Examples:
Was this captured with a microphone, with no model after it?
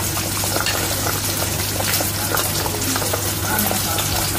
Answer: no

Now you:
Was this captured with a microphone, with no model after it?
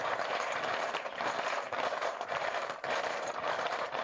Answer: no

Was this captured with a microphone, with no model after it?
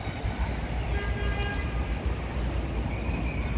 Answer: yes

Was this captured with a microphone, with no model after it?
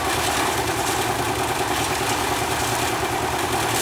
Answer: yes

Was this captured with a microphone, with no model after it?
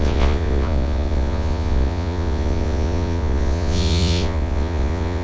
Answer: no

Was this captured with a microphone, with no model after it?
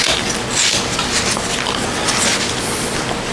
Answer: yes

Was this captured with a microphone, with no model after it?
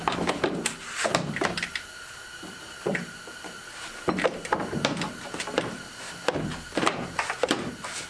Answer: no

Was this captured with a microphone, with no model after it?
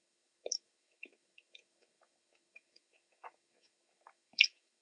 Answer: no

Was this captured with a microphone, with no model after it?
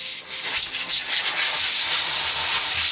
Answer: yes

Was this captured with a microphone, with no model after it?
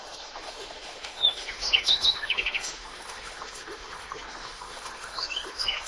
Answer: no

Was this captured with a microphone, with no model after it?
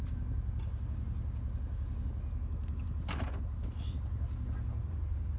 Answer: yes